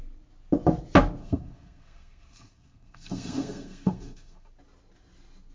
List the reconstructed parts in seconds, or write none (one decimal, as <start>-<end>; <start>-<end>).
1.2-4.5